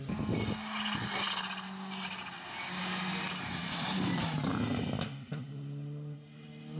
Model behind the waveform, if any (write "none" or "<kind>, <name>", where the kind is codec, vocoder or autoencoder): none